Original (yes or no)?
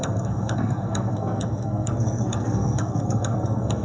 no